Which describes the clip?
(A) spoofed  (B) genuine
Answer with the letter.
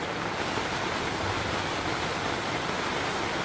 B